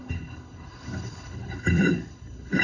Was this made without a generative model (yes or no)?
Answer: no